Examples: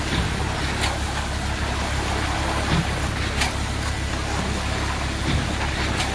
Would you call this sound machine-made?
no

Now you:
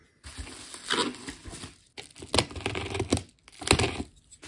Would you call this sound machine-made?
no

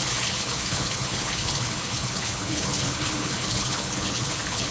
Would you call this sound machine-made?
yes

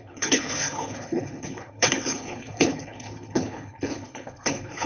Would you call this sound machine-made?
yes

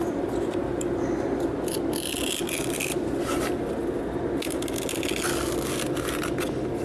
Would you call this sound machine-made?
no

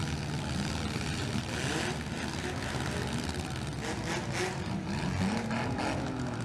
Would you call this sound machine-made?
no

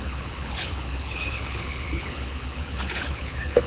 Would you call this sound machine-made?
yes